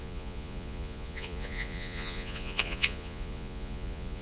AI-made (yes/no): yes